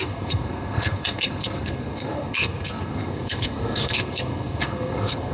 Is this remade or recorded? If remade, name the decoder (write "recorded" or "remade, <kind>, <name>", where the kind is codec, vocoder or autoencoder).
remade, codec, SNAC